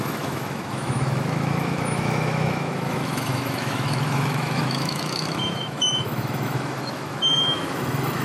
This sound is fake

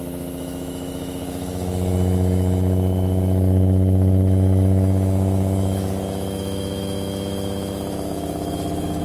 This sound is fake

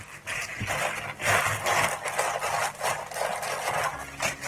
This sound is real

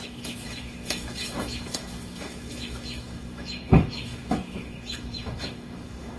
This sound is fake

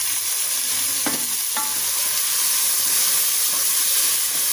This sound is real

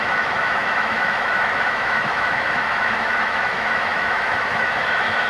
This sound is fake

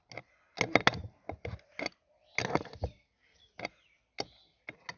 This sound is real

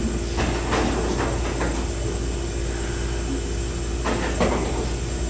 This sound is real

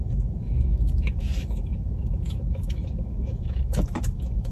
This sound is fake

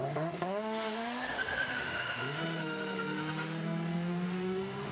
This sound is fake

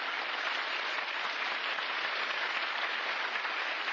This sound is real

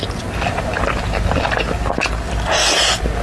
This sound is real